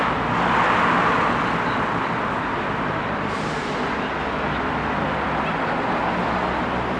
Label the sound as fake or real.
real